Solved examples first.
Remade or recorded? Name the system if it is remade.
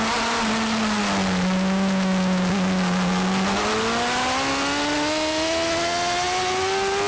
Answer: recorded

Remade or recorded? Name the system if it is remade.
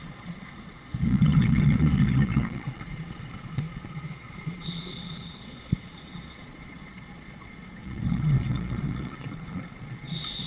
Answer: remade, vocoder, Vocos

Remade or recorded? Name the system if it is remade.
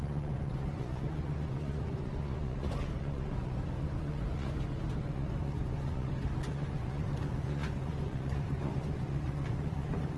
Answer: remade, vocoder, Vocos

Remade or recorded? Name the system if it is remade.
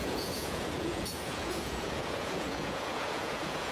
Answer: remade, vocoder, Vocos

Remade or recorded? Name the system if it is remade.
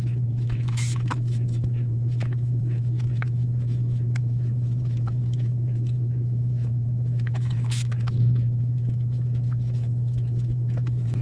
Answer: remade, autoencoder, DAC-VAE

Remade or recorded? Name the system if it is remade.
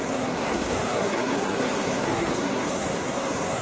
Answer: remade, codec, SNAC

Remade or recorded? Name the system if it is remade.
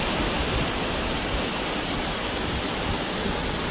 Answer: recorded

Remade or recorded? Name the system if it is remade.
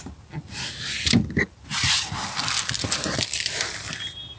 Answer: recorded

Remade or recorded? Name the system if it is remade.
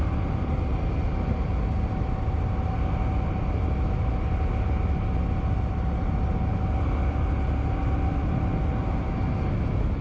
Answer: recorded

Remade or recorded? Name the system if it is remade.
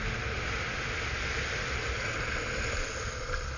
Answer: recorded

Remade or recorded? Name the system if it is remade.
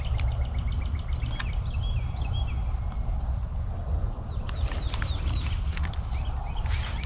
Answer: recorded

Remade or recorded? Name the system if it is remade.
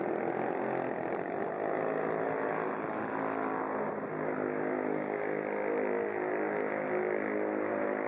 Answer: recorded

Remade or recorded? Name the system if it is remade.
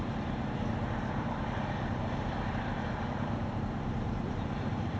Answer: remade, vocoder, BigVGAN v2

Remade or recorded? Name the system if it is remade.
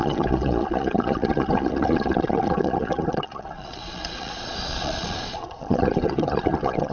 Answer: remade, vocoder, Vocos